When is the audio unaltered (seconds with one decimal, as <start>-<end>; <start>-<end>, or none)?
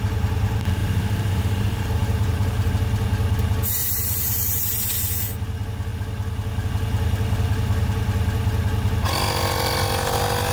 0.0-0.8; 2.7-3.8; 4.6-10.5